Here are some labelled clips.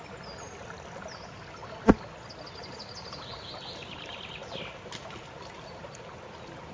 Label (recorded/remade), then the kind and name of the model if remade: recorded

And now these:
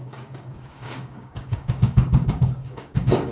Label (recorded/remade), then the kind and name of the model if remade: remade, codec, DAC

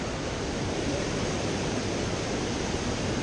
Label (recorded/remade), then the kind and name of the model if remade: recorded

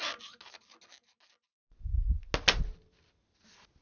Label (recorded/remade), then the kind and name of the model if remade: recorded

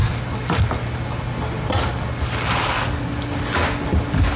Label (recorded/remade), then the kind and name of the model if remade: recorded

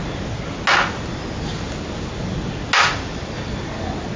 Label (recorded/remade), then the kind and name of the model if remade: recorded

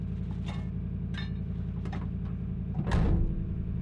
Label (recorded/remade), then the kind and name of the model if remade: recorded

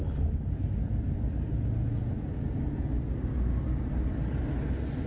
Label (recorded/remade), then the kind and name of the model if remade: recorded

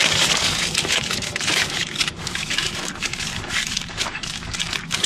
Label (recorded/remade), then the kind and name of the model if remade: remade, codec, DAC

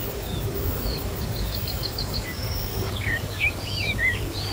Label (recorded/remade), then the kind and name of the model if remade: remade, codec, DAC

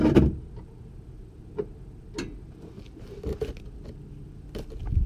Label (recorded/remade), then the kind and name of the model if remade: recorded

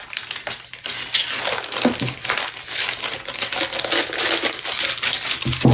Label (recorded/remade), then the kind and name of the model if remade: recorded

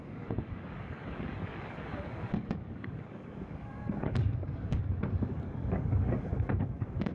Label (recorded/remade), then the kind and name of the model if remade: remade, codec, DAC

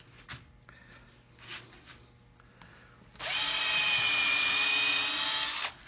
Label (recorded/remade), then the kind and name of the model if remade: recorded